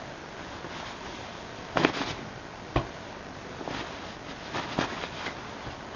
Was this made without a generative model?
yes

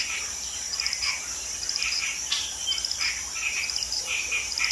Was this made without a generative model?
no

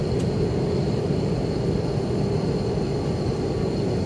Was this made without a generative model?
yes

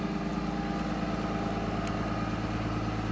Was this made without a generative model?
yes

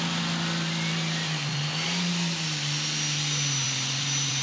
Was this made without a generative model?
no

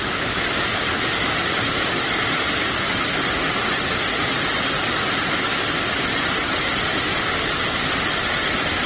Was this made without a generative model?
yes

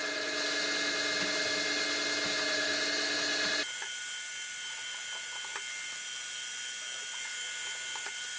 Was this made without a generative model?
yes